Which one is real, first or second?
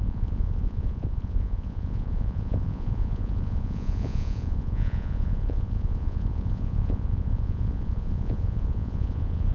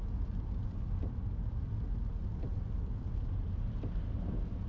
second